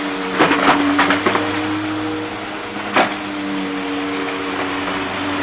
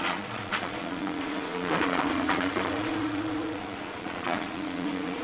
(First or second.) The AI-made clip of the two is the second